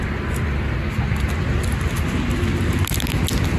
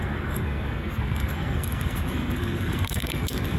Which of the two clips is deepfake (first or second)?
second